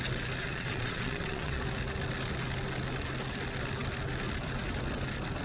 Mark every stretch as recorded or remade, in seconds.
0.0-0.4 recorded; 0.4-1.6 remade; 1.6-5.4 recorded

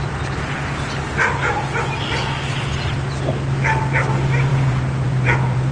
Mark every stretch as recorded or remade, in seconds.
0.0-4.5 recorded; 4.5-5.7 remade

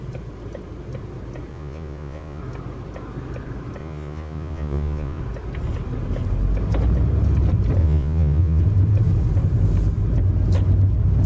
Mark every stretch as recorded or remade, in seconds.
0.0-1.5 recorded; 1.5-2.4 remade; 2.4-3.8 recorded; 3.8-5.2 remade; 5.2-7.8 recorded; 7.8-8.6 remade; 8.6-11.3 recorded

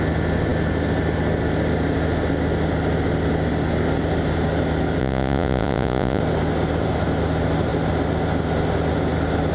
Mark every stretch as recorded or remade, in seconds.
0.0-5.0 recorded; 5.0-6.2 remade; 6.2-9.5 recorded

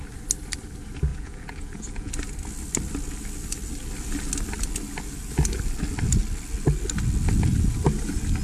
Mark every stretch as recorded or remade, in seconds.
0.0-1.1 recorded; 1.1-2.1 remade; 2.1-8.4 recorded

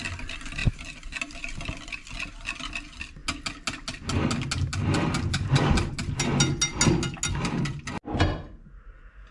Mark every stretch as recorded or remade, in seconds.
0.0-9.3 recorded

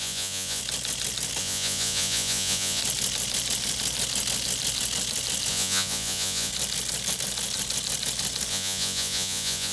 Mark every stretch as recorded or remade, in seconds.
0.0-0.6 remade; 0.6-1.4 recorded; 1.4-2.8 remade; 2.8-5.5 recorded; 5.5-6.5 remade; 6.5-8.5 recorded; 8.5-9.7 remade